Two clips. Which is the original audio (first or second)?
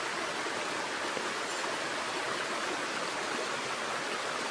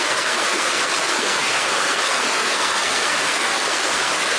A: first